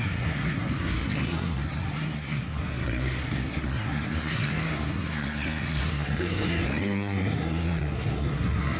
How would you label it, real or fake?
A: fake